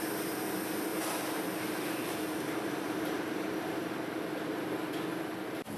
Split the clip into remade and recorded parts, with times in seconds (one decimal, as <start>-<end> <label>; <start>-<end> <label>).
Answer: 0.0-0.9 recorded; 0.9-3.9 remade; 3.9-5.8 recorded